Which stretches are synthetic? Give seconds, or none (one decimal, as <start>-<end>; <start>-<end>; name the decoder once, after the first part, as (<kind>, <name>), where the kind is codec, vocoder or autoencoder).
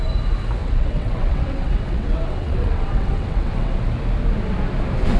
0.6-3.7 (vocoder, WaveNeXt)